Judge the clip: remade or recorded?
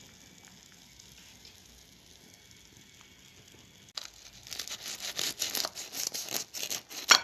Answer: recorded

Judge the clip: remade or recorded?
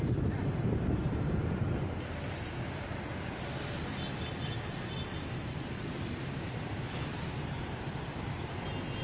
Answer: recorded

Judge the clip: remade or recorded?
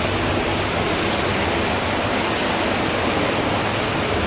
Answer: recorded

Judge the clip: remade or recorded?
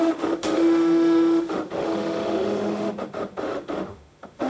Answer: remade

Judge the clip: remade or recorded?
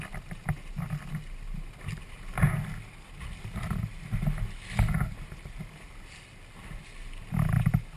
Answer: recorded